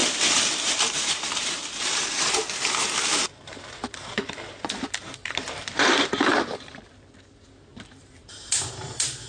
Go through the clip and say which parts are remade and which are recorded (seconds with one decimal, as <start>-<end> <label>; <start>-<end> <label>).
0.0-2.4 remade; 2.4-3.1 recorded; 3.1-6.7 remade; 6.7-7.7 recorded; 7.7-9.3 remade